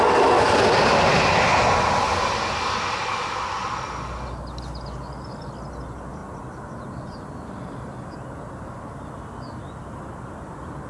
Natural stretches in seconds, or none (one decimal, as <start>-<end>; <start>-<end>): 0.0-10.9